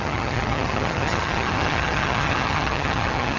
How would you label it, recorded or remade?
remade